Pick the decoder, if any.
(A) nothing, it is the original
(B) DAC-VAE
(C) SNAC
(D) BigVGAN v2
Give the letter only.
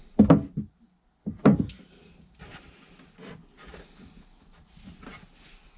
A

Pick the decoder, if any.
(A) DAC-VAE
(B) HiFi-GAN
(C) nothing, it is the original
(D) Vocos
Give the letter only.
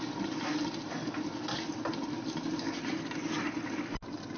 C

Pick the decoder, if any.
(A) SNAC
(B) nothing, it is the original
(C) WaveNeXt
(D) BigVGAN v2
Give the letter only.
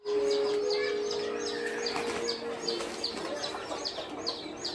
B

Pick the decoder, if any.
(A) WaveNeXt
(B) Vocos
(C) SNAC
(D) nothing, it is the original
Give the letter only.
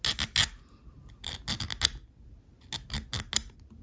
D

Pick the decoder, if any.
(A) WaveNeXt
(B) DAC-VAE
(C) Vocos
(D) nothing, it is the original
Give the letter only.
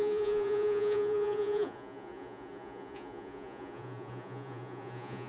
C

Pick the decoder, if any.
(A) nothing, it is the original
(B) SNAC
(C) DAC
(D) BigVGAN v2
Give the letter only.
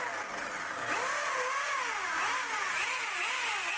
A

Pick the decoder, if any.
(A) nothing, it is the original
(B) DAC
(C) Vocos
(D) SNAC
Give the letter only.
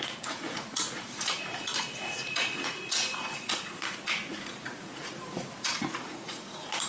C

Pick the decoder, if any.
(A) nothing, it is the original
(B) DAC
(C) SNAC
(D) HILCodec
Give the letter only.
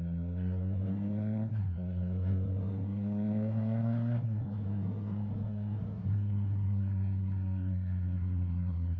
C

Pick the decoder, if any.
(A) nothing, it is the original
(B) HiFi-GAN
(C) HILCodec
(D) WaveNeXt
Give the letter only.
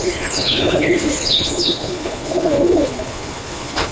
C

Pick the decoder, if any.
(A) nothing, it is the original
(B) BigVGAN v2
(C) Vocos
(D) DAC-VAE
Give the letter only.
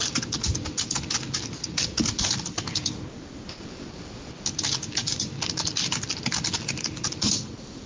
A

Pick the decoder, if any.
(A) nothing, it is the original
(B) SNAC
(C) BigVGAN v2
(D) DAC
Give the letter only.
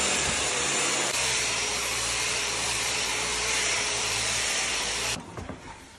C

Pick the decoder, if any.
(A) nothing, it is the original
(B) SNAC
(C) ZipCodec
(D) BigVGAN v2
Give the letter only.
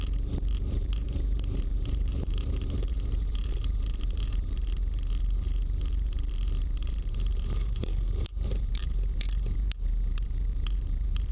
D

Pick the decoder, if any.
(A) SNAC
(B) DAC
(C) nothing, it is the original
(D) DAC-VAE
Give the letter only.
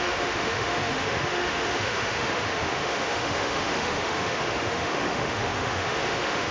D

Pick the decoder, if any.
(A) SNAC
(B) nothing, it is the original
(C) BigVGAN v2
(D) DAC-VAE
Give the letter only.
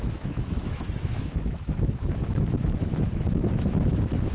D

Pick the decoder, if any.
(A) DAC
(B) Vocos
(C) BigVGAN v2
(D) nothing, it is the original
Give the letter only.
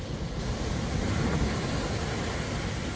D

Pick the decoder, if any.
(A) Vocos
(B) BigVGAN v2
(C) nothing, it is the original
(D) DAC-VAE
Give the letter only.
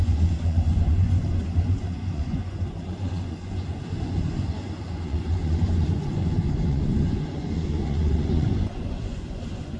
A